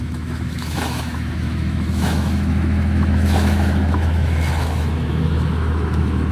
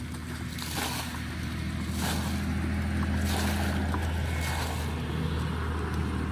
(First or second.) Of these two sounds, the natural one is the second